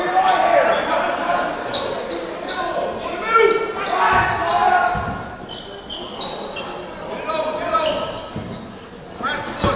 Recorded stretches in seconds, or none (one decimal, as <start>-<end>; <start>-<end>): 0.0-9.8